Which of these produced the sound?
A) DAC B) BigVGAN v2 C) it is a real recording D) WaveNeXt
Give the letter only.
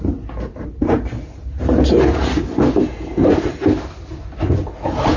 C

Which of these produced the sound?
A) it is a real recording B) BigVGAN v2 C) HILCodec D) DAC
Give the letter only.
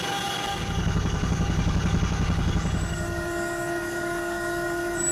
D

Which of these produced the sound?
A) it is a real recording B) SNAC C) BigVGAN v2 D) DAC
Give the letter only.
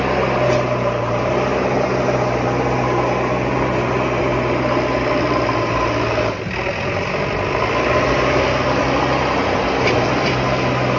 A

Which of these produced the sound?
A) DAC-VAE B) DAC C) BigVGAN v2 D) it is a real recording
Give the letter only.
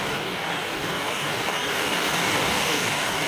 B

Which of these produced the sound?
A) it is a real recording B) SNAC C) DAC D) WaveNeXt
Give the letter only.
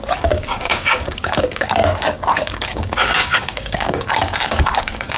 C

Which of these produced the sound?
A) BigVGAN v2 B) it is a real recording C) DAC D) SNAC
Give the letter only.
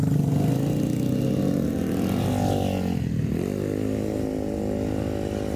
B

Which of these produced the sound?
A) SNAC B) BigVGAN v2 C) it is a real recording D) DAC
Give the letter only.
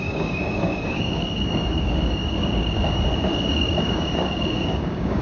D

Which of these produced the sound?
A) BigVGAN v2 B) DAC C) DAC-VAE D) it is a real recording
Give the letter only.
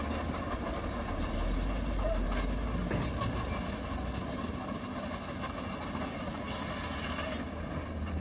D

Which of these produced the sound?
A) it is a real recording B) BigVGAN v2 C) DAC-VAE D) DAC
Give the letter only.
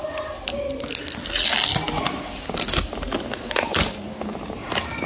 A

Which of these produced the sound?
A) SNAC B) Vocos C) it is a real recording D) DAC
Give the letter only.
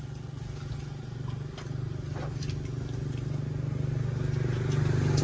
C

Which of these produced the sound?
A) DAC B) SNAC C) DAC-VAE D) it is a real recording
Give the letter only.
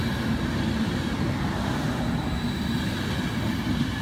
D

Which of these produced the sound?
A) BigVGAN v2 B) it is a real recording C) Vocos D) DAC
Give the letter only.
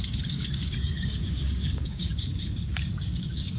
D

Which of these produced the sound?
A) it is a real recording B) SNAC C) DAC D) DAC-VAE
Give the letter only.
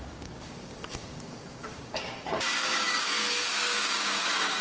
C